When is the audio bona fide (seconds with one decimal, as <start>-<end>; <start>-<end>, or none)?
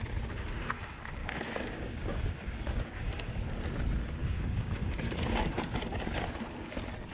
0.0-1.2; 3.3-4.2; 6.0-7.1